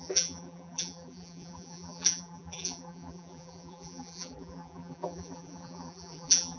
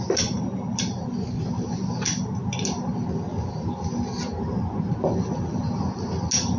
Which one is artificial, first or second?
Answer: first